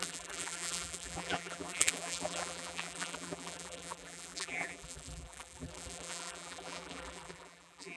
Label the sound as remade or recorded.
remade